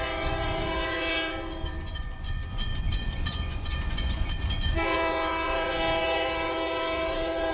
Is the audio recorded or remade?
remade